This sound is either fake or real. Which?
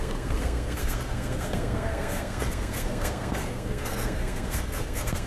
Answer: fake